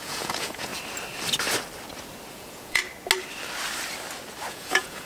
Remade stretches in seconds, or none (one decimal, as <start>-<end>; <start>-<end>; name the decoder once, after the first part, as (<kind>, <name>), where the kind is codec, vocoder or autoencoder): 0.0-0.7 (vocoder, Vocos); 2.3-2.8; 4.5-5.1